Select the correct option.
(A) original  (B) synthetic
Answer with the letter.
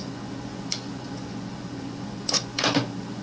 B